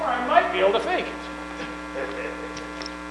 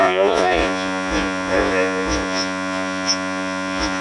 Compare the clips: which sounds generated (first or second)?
second